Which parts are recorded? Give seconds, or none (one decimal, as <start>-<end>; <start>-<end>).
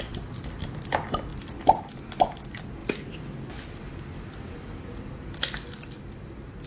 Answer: 0.0-6.7